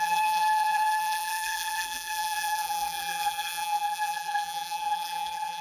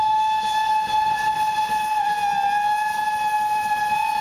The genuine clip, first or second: second